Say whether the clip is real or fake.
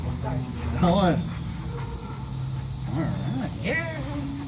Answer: real